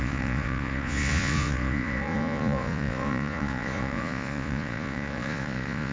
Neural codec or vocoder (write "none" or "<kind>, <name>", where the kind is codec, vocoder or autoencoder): vocoder, Vocos